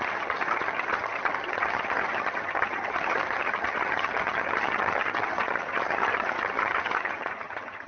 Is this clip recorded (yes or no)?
no